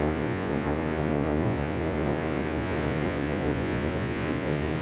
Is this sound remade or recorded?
remade